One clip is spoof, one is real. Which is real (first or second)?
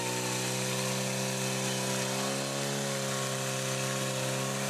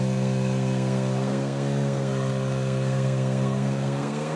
first